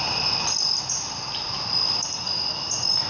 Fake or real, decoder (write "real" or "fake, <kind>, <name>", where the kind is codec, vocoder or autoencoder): fake, vocoder, BigVGAN v2